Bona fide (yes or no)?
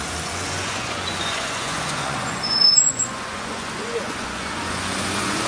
no